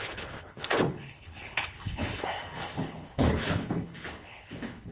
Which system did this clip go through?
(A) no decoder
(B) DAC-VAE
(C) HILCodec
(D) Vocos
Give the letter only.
C